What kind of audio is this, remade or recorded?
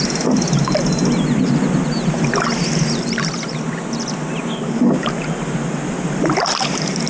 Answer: recorded